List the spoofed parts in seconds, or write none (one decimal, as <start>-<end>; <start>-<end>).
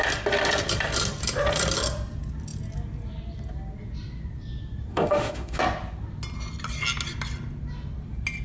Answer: 4.9-5.6